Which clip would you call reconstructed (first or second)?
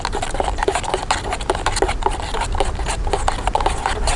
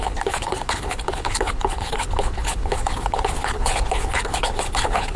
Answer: second